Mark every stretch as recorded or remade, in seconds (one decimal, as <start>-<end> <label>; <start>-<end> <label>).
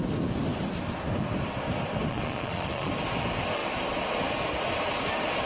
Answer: 0.0-2.1 recorded; 2.1-2.9 remade; 2.9-5.5 recorded